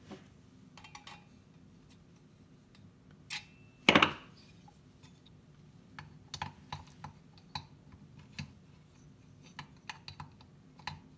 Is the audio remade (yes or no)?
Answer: no